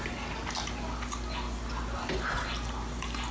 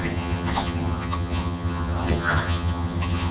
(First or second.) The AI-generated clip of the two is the second